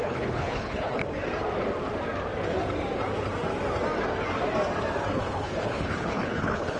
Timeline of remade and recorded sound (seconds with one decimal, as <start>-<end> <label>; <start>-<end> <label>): 0.0-1.0 remade; 1.0-5.1 recorded; 5.1-6.8 remade